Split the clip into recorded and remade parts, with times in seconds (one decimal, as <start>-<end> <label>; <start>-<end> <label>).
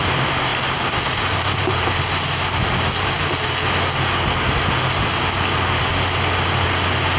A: 0.0-0.5 recorded; 0.5-2.0 remade; 2.0-7.2 recorded